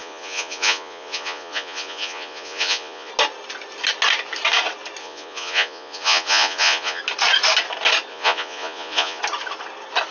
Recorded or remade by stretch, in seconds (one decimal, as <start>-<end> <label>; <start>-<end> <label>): 0.0-3.1 remade; 3.1-5.0 recorded; 5.0-7.0 remade; 7.0-8.1 recorded; 8.1-9.2 remade; 9.2-10.1 recorded